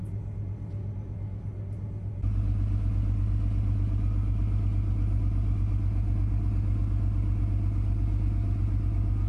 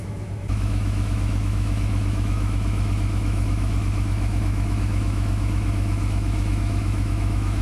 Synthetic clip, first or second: second